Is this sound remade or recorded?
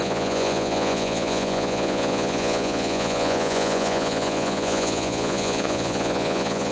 remade